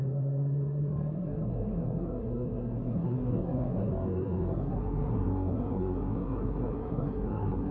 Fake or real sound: fake